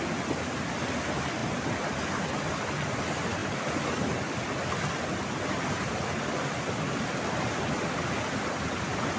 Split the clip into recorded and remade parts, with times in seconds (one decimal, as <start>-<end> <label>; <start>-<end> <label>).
0.0-9.2 recorded